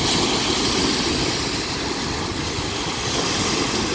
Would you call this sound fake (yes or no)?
no